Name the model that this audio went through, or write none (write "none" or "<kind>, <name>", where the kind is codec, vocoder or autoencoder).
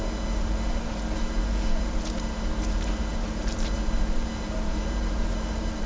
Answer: vocoder, BigVGAN v2